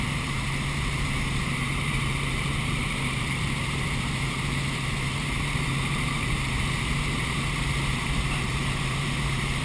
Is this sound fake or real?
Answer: fake